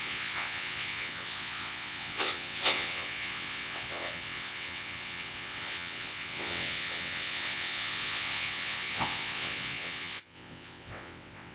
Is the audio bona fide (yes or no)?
no